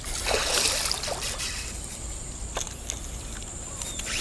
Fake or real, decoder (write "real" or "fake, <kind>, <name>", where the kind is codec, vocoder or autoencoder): real